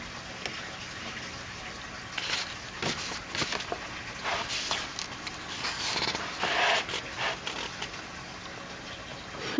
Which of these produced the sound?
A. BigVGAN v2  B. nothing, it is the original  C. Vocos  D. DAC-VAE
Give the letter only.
B